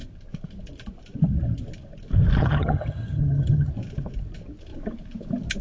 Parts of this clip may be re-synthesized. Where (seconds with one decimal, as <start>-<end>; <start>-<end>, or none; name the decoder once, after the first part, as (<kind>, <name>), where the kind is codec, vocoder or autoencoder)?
2.4-3.7 (vocoder, HiFi-GAN)